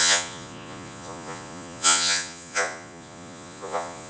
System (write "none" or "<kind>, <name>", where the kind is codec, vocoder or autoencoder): vocoder, Vocos